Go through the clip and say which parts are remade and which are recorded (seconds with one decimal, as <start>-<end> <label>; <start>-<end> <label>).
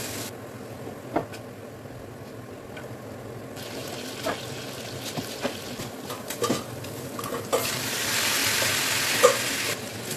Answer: 0.0-10.2 recorded